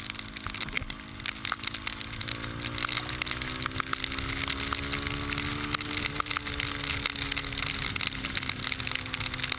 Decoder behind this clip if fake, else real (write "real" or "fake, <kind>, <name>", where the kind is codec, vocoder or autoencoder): real